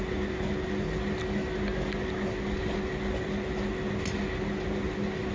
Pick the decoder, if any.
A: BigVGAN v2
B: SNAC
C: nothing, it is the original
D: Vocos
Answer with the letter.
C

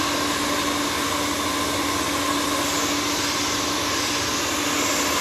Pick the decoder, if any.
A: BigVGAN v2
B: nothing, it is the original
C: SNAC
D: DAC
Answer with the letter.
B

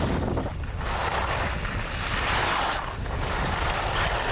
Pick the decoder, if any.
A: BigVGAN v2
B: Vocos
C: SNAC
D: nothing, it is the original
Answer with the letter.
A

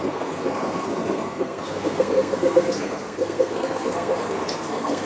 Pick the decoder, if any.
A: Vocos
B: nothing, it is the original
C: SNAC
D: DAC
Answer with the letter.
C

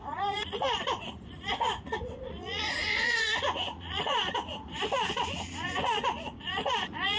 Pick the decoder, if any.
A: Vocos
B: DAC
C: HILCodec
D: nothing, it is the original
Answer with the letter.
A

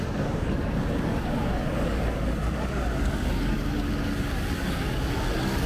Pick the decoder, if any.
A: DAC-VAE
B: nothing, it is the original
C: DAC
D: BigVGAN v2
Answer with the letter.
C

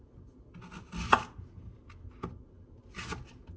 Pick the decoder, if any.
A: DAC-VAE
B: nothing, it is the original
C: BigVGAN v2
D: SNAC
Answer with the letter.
B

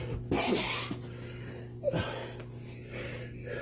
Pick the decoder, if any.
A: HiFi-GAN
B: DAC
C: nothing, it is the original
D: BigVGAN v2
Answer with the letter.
C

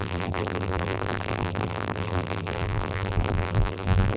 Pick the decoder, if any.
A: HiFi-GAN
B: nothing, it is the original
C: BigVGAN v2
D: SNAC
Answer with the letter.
C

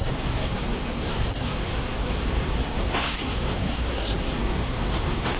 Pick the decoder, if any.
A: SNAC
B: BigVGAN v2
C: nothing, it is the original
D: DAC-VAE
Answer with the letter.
A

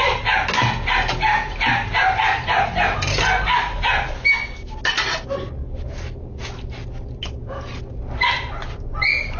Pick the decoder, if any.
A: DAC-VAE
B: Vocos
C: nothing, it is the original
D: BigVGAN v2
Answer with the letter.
C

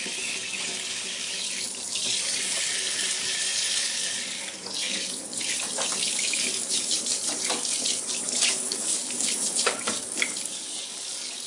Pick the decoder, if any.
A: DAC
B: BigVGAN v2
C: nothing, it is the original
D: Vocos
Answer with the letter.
A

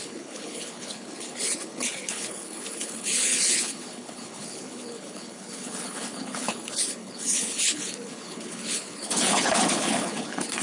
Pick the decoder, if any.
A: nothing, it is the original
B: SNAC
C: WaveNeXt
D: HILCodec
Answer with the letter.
D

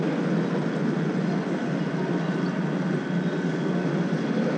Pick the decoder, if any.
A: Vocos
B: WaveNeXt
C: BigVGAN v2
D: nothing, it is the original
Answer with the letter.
D